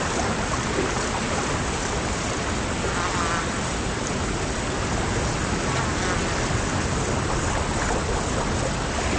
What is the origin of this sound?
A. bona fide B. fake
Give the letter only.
A